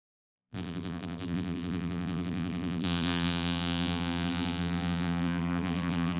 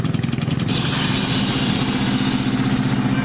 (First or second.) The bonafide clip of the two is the second